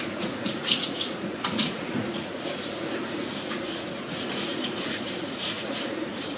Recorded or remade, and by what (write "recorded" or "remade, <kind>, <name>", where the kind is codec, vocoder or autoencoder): remade, vocoder, Vocos